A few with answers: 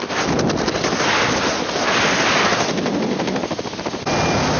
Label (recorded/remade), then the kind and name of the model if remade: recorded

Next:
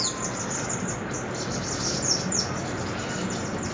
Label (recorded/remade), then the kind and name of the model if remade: recorded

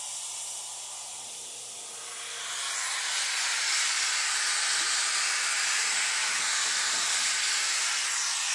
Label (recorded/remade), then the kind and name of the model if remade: recorded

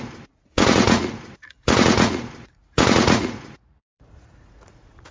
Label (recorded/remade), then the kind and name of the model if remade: remade, vocoder, Vocos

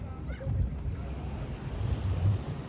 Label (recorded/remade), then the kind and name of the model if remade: recorded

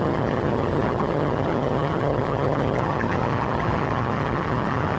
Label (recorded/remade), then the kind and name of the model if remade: remade, vocoder, HiFi-GAN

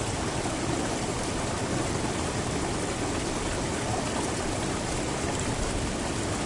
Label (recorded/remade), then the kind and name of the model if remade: recorded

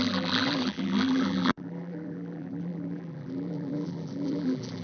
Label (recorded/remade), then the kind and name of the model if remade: remade, vocoder, BigVGAN v2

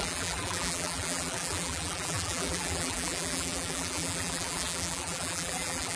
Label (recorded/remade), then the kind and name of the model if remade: remade, vocoder, BigVGAN v2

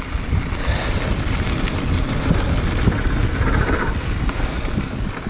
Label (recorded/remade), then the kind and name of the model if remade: recorded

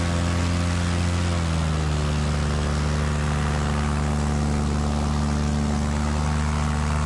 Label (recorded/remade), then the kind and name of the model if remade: recorded